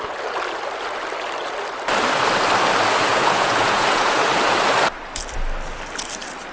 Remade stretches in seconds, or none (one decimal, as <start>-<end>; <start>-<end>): 3.1-4.2